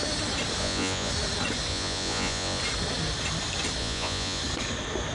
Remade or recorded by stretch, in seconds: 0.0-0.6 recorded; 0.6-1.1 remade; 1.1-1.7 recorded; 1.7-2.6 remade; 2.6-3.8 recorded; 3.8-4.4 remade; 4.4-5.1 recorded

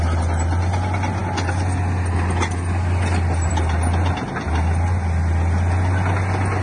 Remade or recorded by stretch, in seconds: 0.0-6.6 recorded